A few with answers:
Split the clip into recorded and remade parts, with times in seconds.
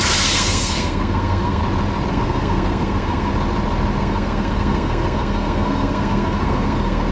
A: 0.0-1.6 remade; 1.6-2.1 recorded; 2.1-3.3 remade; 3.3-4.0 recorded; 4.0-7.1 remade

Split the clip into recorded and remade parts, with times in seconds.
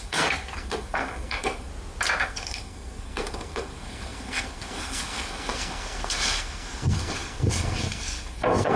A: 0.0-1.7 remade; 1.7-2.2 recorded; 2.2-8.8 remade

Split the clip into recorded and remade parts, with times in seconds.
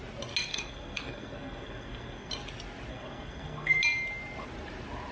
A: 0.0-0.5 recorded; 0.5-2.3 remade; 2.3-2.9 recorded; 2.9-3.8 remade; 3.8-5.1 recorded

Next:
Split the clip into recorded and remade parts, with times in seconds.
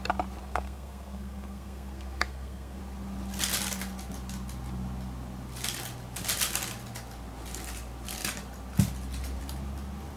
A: 0.0-0.4 recorded; 0.4-2.8 remade; 2.8-10.2 recorded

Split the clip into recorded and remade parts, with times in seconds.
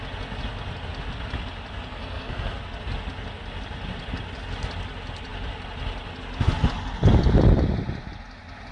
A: 0.0-1.9 recorded; 1.9-2.6 remade; 2.6-8.7 recorded